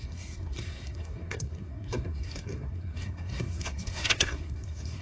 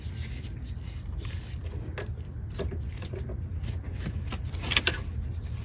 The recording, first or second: second